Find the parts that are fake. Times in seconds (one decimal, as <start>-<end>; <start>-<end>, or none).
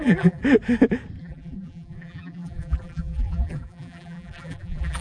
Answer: 0.0-0.4; 1.2-5.0